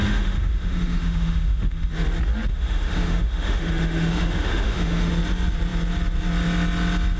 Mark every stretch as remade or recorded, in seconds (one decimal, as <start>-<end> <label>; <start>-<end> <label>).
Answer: 0.0-1.9 remade; 1.9-2.5 recorded; 2.5-5.1 remade; 5.1-7.2 recorded